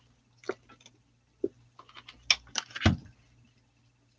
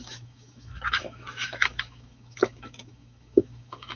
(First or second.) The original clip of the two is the first